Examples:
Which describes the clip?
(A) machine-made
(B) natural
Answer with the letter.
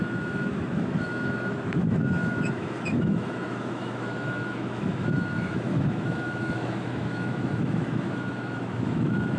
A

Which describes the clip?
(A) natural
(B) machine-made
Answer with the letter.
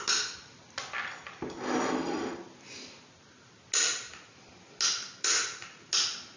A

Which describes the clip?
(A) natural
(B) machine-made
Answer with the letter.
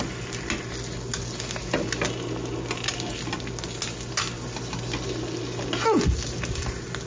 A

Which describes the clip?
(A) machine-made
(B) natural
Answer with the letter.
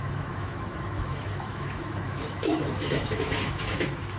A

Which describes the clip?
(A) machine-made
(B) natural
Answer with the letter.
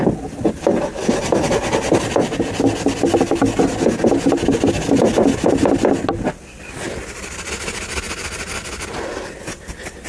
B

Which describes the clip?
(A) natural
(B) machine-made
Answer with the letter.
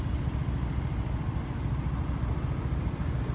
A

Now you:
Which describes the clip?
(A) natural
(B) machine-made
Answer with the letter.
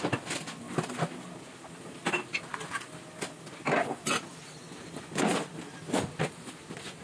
A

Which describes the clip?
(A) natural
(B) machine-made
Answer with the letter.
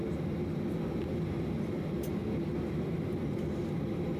A